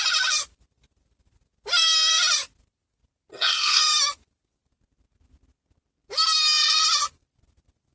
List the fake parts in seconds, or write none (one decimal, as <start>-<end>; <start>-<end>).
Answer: 3.3-3.8